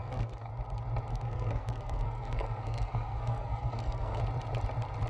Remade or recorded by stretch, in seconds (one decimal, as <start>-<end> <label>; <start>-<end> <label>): 0.0-0.5 remade; 0.5-1.1 recorded; 1.1-4.2 remade; 4.2-5.1 recorded

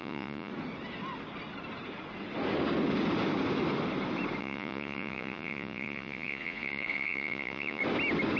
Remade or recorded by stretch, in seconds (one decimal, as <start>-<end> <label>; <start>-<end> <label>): 0.0-0.5 remade; 0.5-4.4 recorded; 4.4-7.8 remade; 7.8-8.4 recorded

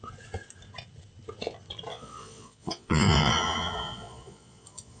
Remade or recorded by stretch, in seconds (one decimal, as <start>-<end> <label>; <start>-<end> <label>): 0.0-1.9 recorded; 1.9-5.0 remade

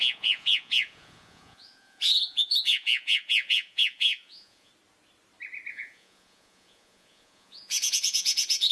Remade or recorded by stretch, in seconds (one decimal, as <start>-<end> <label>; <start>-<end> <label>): 0.0-4.7 remade; 4.7-5.7 recorded; 5.7-8.7 remade